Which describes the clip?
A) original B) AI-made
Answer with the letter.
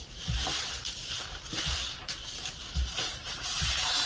B